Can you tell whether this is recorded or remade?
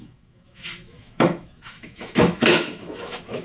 remade